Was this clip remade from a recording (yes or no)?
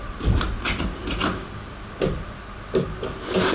no